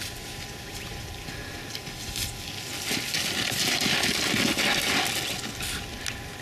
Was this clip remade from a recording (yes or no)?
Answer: no